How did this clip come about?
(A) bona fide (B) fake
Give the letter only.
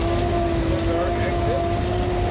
A